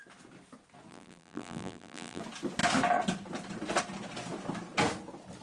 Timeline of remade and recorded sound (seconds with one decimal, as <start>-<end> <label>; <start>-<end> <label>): 0.0-0.9 recorded; 0.9-2.2 remade; 2.2-5.4 recorded

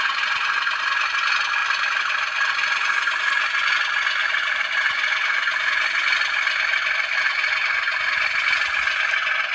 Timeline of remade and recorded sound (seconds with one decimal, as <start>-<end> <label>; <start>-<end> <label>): 0.0-4.2 recorded; 4.2-4.7 remade; 4.7-9.5 recorded